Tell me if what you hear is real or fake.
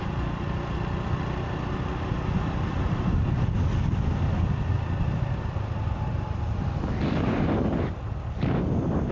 real